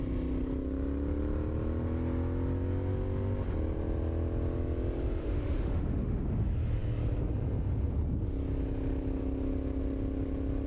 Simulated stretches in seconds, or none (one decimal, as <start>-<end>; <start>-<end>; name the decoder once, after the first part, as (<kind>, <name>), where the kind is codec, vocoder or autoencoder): 5.2-6.2 (autoencoder, DAC-VAE)